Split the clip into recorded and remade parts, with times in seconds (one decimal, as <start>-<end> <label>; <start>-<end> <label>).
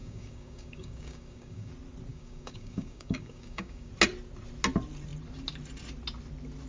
0.0-1.7 remade; 1.7-2.1 recorded; 2.1-3.9 remade; 3.9-6.7 recorded